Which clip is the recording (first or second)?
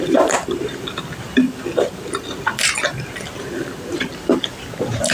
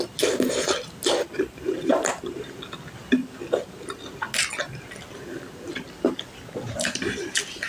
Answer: second